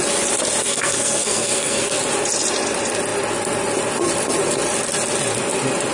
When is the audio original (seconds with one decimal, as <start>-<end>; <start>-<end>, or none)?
0.0-0.6; 2.0-5.9